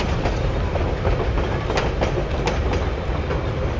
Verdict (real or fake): real